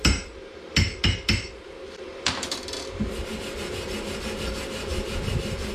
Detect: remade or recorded remade